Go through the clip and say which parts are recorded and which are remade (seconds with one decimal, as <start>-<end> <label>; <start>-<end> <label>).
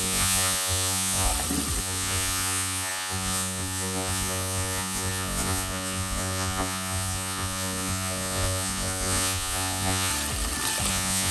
0.0-1.3 remade; 1.3-1.8 recorded; 1.8-10.1 remade; 10.1-10.9 recorded; 10.9-11.3 remade